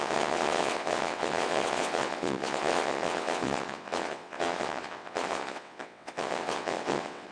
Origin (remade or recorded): remade